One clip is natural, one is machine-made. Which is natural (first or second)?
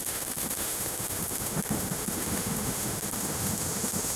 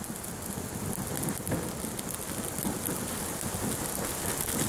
second